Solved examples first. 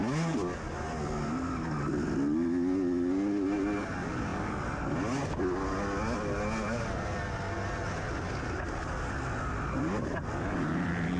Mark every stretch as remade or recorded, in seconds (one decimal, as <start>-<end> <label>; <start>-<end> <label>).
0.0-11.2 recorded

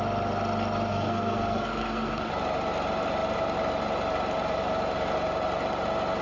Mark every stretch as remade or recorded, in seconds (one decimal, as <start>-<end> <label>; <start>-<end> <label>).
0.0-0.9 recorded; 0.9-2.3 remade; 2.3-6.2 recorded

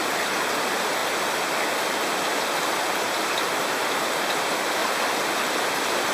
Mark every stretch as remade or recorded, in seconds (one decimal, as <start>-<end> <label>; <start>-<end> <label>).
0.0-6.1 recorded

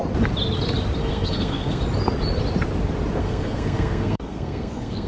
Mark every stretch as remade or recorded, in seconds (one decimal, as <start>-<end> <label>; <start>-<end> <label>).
0.0-1.0 recorded; 1.0-1.8 remade; 1.8-3.2 recorded; 3.2-5.1 remade

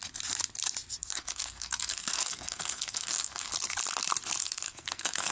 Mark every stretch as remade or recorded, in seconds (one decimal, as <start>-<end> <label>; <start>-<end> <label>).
0.0-1.0 recorded; 1.0-3.5 remade; 3.5-4.4 recorded; 4.4-5.3 remade

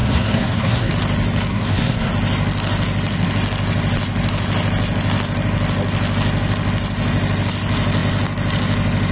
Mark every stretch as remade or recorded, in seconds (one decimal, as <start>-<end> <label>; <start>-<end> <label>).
0.0-0.9 remade; 0.9-1.5 recorded; 1.5-2.1 remade; 2.1-9.1 recorded

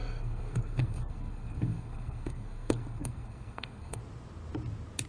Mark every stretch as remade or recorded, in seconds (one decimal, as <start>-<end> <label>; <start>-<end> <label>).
0.0-4.0 remade; 4.0-5.1 recorded

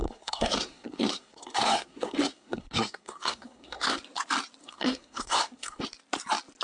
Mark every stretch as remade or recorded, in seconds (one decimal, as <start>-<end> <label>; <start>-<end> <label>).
0.0-4.0 remade; 4.0-4.6 recorded; 4.6-5.8 remade; 5.8-6.6 recorded